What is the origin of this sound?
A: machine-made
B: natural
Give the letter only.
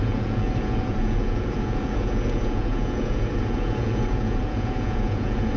A